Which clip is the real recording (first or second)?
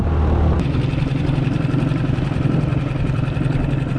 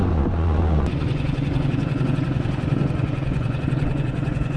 first